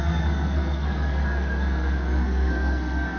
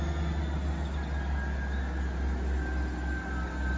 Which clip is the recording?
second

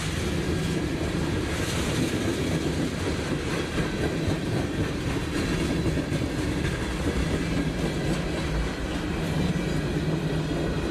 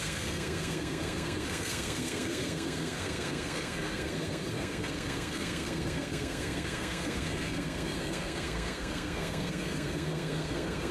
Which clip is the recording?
first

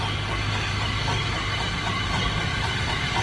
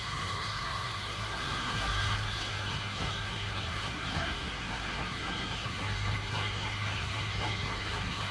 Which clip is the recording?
first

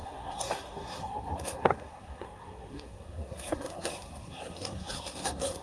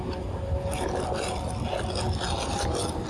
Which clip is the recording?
second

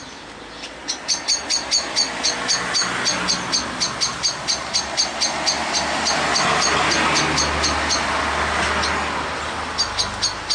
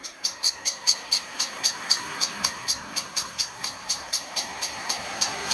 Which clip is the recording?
first